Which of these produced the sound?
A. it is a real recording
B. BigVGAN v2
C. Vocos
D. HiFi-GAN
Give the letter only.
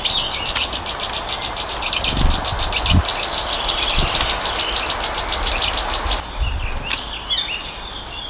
A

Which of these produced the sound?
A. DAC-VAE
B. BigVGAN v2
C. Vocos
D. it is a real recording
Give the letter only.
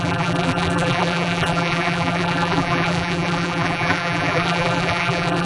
B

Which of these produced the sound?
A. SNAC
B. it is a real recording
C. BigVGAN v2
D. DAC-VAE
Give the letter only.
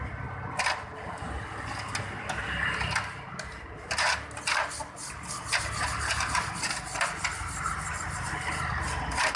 B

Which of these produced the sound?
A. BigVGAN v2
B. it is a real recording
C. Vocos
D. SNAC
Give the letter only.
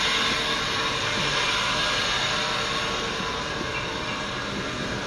B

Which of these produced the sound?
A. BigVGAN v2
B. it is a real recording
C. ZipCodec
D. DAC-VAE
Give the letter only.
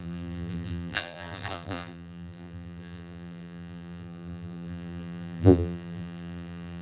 A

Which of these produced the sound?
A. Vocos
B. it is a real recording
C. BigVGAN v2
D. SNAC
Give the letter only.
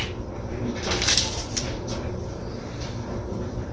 C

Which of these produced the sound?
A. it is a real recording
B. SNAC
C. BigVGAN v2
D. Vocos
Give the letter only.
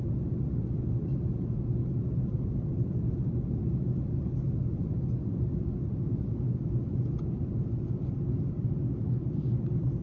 A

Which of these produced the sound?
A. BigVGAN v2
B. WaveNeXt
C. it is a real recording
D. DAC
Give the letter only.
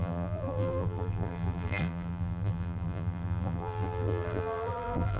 A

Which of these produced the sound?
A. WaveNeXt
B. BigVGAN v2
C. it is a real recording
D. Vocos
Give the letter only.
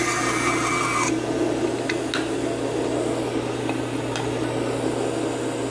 C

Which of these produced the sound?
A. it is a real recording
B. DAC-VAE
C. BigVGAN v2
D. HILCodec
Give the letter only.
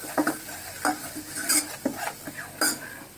A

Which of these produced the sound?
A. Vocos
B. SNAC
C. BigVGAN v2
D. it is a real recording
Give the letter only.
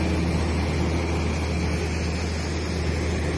D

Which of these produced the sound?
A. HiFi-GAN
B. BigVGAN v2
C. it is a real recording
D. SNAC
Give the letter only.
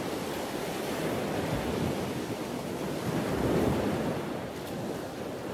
C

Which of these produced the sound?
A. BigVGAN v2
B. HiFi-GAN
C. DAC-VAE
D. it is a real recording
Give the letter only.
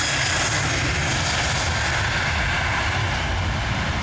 D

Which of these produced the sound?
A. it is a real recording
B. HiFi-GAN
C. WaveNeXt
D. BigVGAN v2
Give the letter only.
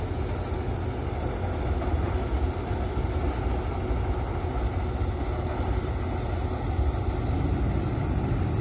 A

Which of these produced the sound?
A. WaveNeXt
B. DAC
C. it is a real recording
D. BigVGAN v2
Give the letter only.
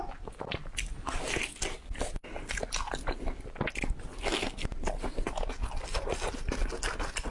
C